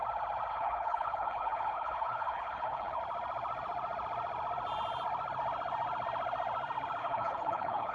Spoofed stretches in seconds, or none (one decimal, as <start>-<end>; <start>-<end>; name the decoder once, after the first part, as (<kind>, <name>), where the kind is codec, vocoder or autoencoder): 0.5-3.0 (codec, HILCodec); 7.0-7.9